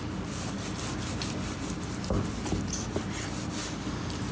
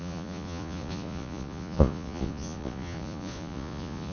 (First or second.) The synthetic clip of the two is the second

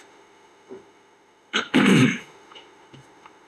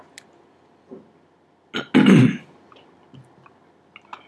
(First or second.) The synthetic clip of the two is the first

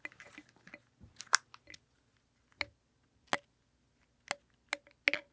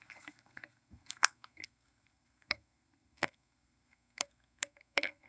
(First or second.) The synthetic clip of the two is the second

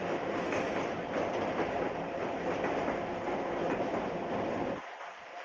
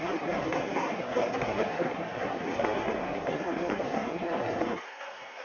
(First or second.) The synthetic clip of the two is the second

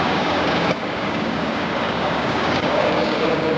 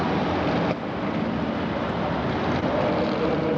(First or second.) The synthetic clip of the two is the first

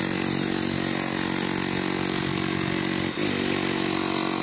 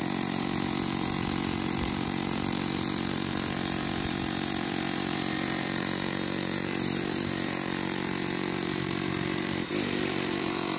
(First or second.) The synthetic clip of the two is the second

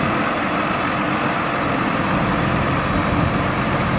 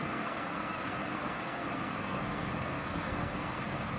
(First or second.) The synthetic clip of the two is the second